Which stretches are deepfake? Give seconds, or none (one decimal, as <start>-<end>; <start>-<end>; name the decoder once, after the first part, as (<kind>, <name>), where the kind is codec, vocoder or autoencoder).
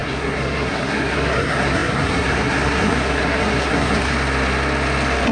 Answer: 0.0-4.1 (codec, SNAC)